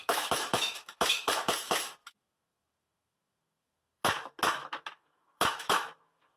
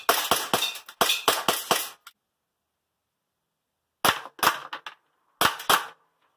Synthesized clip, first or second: first